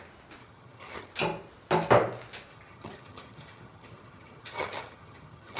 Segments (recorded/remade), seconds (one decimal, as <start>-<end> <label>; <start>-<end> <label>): 0.0-0.4 recorded; 0.4-1.1 remade; 1.1-2.5 recorded; 2.5-5.6 remade

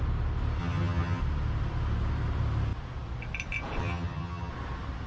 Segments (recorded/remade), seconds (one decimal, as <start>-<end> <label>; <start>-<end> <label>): 0.0-0.6 recorded; 0.6-1.2 remade; 1.2-3.8 recorded; 3.8-4.5 remade; 4.5-5.1 recorded

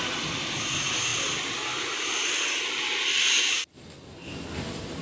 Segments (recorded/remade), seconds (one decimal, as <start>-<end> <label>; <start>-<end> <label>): 0.0-5.0 recorded

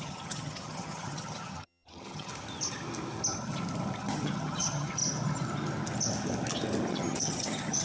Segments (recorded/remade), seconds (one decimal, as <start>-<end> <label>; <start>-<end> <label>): 0.0-2.3 remade; 2.3-4.0 recorded; 4.0-5.0 remade; 5.0-6.9 recorded; 6.9-7.8 remade